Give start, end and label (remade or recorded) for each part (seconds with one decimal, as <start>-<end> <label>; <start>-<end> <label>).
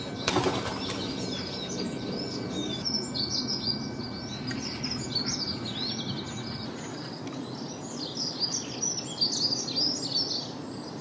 0.0-11.0 recorded